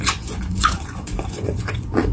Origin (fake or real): fake